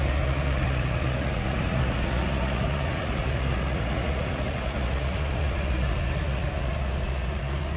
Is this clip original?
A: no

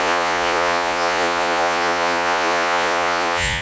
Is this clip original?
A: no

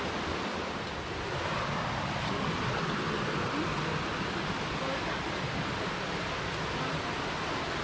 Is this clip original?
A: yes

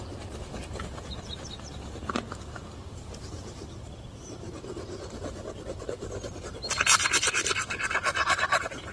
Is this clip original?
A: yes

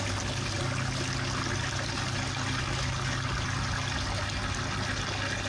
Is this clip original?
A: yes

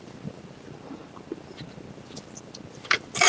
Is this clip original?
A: yes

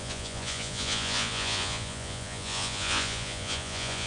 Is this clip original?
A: no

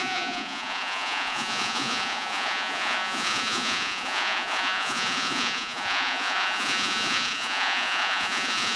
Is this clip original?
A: no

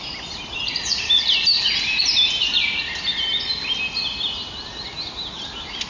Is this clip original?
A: yes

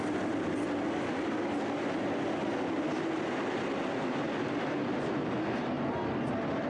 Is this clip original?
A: yes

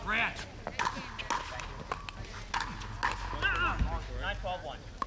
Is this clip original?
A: yes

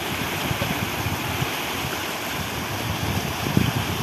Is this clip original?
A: yes